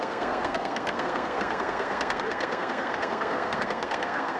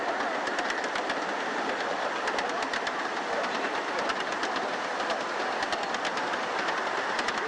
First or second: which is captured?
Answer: second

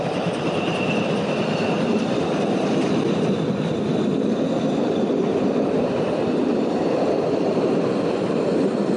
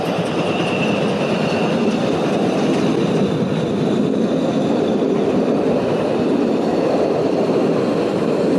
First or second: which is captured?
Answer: second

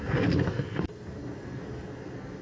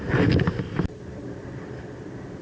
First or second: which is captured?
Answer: second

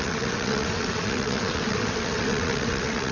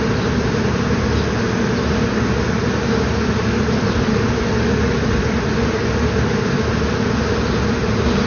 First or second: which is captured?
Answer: second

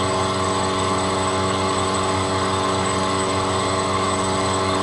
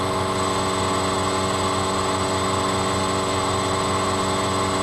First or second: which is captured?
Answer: second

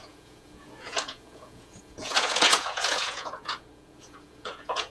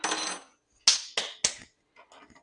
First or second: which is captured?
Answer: second